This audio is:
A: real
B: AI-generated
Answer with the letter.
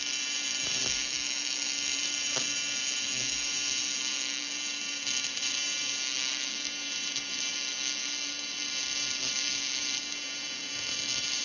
B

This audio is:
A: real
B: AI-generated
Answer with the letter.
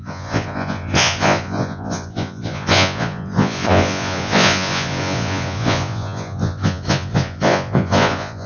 B